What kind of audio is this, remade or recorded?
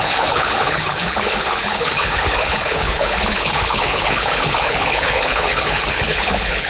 remade